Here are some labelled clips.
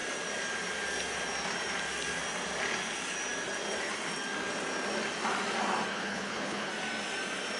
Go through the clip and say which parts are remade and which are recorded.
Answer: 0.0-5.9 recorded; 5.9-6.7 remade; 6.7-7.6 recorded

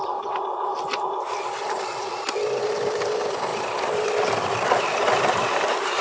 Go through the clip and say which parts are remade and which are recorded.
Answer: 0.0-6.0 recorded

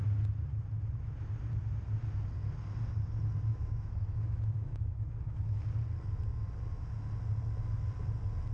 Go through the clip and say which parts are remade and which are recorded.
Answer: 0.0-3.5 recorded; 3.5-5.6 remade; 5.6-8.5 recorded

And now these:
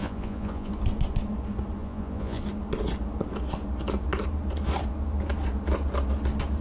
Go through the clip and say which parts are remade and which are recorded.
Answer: 0.0-0.7 remade; 0.7-1.8 recorded; 1.8-2.4 remade; 2.4-6.6 recorded

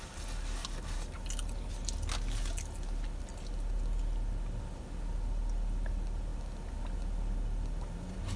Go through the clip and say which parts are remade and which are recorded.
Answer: 0.0-8.4 recorded

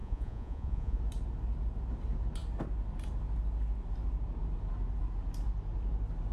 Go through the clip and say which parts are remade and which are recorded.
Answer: 0.0-1.0 remade; 1.0-6.3 recorded

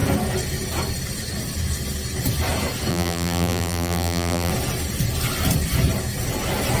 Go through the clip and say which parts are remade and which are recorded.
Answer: 0.0-2.9 recorded; 2.9-4.5 remade; 4.5-6.8 recorded